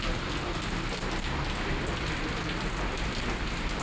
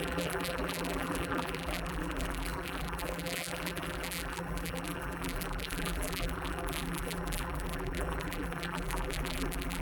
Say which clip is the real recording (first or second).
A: first